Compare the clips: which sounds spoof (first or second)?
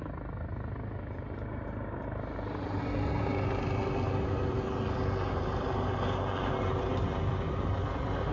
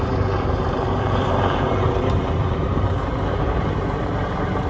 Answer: second